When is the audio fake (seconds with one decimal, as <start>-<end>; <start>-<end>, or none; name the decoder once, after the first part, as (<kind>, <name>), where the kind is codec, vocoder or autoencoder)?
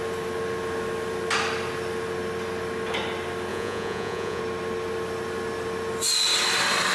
3.5-4.4 (vocoder, Vocos)